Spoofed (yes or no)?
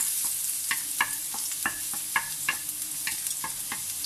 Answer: no